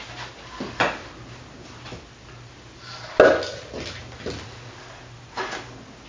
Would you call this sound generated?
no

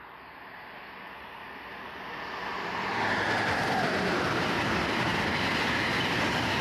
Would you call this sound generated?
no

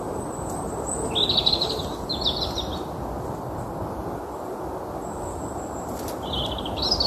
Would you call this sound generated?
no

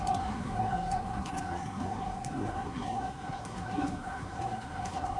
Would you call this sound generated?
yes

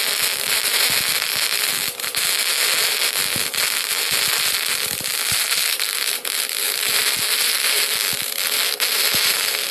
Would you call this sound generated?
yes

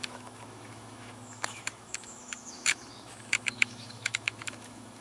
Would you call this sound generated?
yes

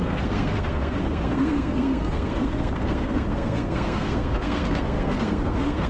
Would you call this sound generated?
yes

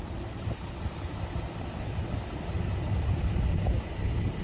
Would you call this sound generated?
no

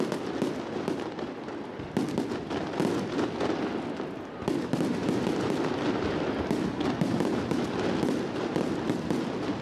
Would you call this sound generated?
no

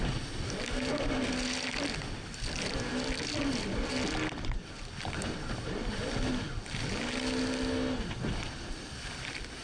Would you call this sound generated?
no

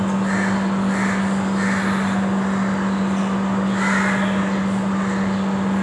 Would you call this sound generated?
no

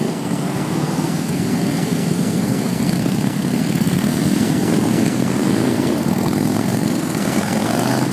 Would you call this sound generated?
yes